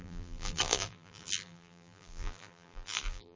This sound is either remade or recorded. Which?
remade